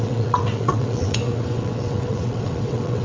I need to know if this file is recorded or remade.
remade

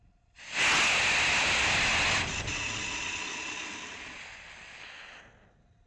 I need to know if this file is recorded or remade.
recorded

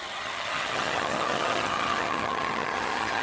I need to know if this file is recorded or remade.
remade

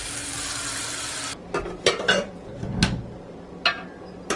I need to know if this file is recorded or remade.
recorded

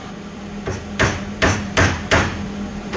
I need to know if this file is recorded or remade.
remade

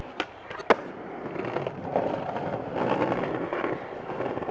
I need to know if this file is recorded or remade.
recorded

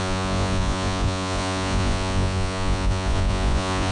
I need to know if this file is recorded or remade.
remade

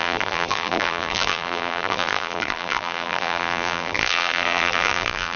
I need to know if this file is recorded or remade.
remade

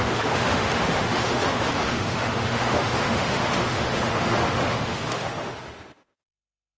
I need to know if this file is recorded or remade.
remade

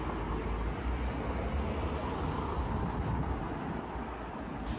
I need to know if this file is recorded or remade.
recorded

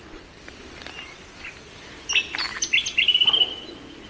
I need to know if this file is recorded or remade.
recorded